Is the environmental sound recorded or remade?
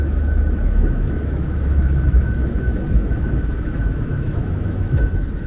remade